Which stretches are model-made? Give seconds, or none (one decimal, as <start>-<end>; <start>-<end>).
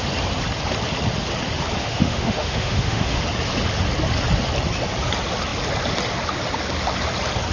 1.8-3.2